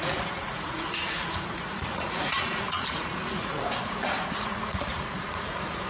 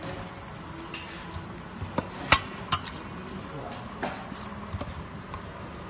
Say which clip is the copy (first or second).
first